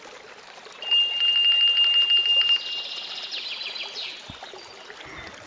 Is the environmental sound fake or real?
real